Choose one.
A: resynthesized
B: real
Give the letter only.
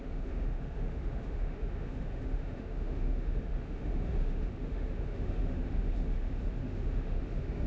A